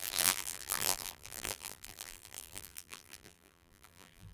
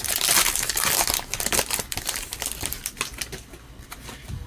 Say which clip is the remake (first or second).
first